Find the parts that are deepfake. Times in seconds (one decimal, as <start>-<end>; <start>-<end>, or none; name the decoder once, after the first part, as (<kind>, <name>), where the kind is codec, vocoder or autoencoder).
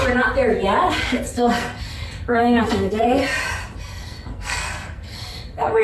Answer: 0.9-3.2 (codec, SNAC); 3.8-5.8